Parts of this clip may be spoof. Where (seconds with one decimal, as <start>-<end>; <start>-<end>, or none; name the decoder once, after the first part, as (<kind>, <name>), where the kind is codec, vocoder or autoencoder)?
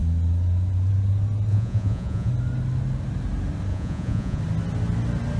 1.5-2.3 (vocoder, Vocos); 3.7-4.4